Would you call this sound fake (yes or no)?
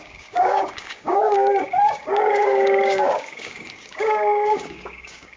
yes